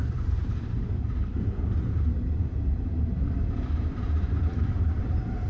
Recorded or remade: remade